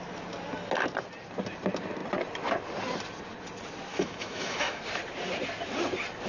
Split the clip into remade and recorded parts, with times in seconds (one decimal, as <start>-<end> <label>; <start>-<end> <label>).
0.0-3.9 recorded; 3.9-4.8 remade; 4.8-6.3 recorded